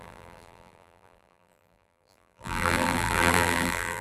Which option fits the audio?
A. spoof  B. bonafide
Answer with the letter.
A